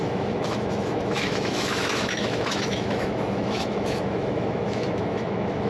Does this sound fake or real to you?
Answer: fake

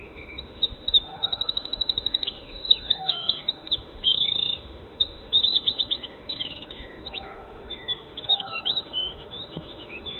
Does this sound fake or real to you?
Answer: fake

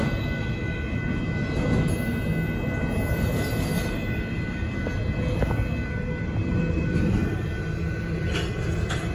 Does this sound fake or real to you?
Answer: real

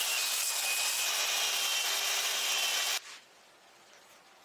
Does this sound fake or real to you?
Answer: real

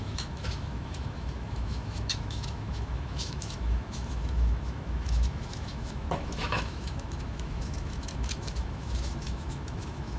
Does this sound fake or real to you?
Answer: fake